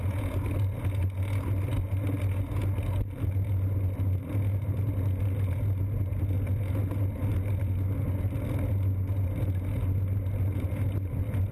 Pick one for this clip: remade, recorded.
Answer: recorded